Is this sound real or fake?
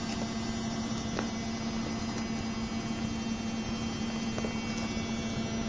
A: real